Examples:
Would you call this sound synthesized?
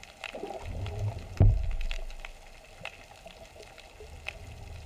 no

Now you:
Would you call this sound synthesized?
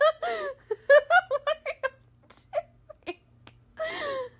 no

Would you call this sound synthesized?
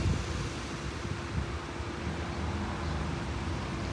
no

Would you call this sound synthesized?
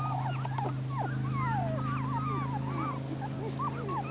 no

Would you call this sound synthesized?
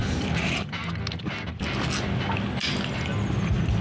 no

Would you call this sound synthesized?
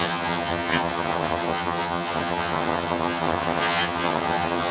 yes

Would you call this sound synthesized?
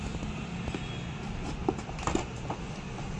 no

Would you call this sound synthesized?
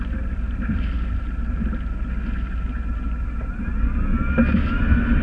no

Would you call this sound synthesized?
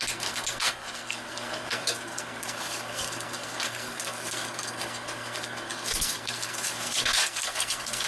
yes